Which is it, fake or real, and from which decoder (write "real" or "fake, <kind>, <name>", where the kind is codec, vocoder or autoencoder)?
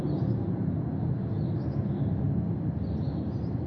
real